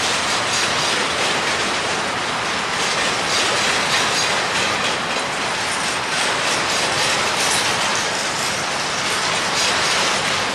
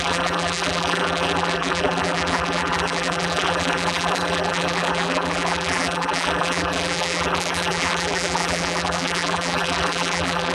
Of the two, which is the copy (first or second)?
second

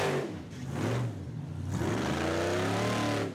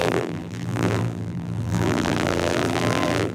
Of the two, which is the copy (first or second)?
second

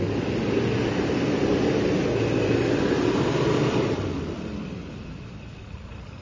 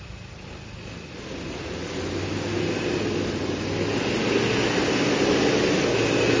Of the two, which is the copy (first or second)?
first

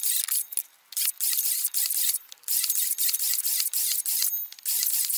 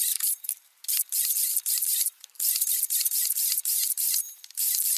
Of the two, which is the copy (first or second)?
second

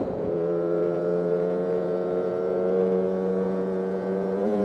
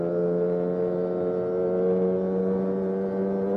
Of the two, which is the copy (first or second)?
first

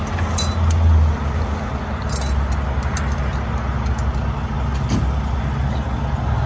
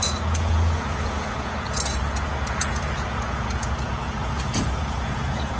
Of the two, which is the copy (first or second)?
second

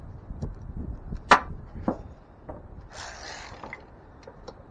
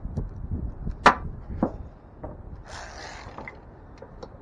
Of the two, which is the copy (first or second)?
first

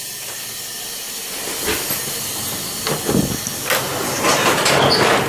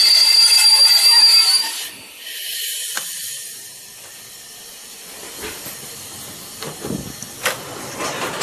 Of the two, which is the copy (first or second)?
second